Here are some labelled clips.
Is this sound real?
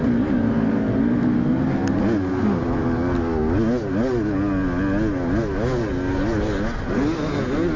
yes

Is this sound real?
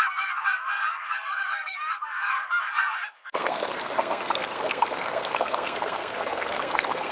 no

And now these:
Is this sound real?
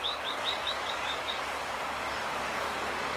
no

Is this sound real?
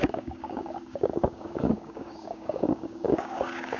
no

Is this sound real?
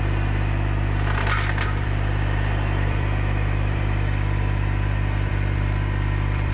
no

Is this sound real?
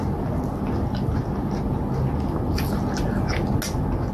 yes